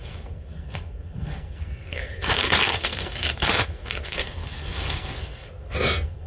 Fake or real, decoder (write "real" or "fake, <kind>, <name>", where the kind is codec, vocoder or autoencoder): fake, codec, SNAC